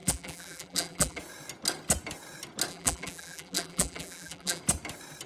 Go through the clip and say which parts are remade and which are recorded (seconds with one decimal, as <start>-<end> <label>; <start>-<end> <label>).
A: 0.0-1.2 remade; 1.2-2.7 recorded; 2.7-4.6 remade; 4.6-5.3 recorded